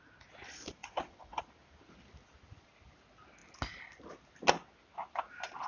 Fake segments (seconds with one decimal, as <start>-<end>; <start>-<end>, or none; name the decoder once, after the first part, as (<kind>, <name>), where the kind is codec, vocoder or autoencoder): 0.8-1.4 (vocoder, WaveNeXt)